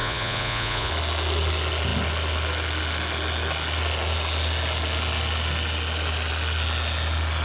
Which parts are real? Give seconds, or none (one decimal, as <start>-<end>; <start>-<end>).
0.9-7.4